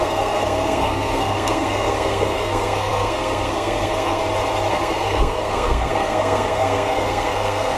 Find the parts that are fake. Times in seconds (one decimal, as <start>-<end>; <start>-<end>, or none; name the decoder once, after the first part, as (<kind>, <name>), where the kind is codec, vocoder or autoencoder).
0.0-4.2 (codec, SNAC); 4.7-7.8